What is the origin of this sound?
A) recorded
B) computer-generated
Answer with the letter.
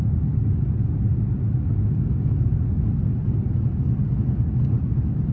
A